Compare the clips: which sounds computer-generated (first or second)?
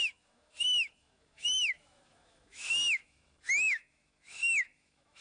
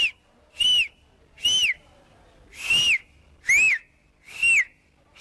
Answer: first